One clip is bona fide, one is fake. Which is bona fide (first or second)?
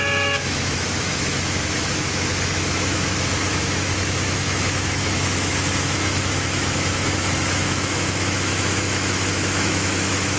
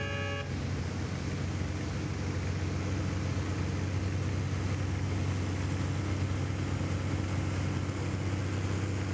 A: second